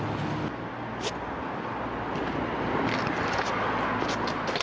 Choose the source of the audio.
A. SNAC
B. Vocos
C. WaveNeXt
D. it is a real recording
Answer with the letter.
D